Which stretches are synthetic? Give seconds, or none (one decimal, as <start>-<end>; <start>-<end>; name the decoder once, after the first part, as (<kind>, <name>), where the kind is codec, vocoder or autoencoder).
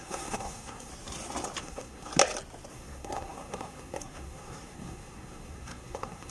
0.0-0.9 (codec, SNAC); 1.6-2.1; 2.7-6.3